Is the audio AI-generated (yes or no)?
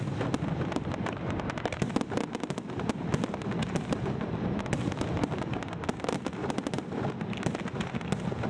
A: no